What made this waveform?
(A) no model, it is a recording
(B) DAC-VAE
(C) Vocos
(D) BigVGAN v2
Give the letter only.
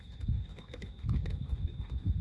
B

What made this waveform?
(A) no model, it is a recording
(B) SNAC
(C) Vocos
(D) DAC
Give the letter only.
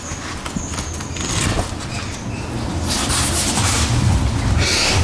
A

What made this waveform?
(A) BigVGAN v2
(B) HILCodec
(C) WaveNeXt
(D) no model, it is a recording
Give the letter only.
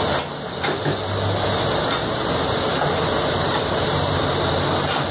D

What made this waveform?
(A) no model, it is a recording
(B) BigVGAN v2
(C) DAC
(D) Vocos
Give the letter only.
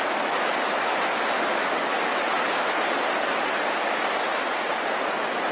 A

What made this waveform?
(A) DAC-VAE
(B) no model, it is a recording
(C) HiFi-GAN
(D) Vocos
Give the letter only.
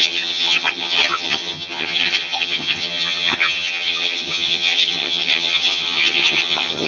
C